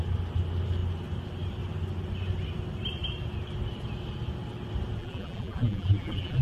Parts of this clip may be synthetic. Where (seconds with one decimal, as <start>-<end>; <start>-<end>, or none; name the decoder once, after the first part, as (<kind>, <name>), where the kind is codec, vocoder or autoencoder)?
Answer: 5.0-6.4 (vocoder, BigVGAN v2)